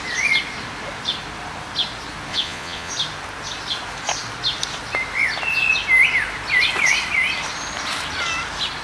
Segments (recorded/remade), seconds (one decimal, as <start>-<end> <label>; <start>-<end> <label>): 0.0-2.3 recorded; 2.3-2.9 remade; 2.9-8.8 recorded